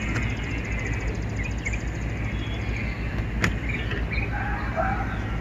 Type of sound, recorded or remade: recorded